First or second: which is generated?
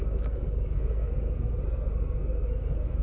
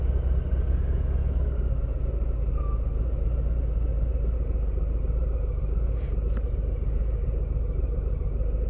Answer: first